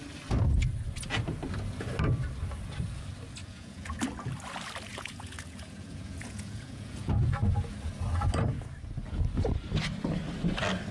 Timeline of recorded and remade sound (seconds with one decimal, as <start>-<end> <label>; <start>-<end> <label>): 0.0-3.4 recorded; 3.4-4.0 remade; 4.0-4.9 recorded; 4.9-7.3 remade; 7.3-10.9 recorded